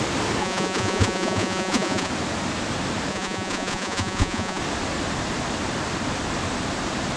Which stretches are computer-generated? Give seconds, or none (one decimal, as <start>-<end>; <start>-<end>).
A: 0.4-2.1; 3.1-4.6